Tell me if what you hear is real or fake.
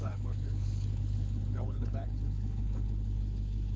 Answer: fake